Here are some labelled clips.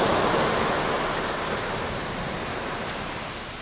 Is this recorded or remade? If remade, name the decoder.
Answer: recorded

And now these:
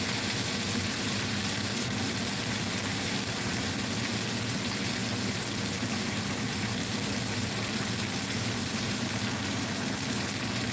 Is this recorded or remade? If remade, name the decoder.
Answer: recorded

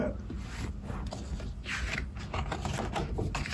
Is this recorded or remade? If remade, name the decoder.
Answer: recorded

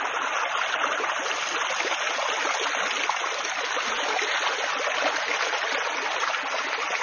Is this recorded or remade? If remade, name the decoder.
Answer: recorded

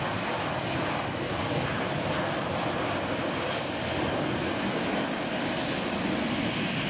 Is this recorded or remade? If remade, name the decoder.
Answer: recorded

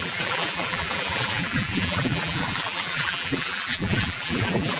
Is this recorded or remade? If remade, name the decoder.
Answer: remade, vocoder, BigVGAN v2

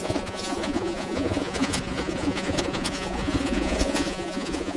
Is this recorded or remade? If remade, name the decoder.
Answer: remade, vocoder, Vocos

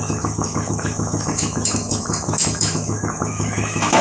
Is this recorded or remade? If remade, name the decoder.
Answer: remade, autoencoder, DAC-VAE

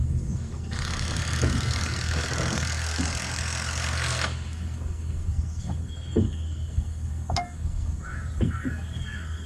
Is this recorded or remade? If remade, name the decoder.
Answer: remade, codec, SNAC